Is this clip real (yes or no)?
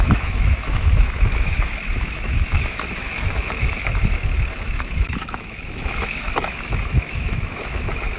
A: no